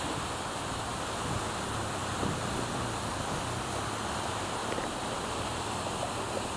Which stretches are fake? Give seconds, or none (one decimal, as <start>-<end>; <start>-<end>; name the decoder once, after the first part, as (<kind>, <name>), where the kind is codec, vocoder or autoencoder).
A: 4.6-5.3 (vocoder, BigVGAN v2)